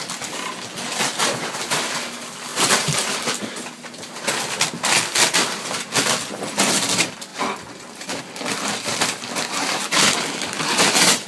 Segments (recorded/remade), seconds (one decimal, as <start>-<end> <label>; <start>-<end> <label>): 0.0-2.5 recorded; 2.5-3.2 remade; 3.2-11.3 recorded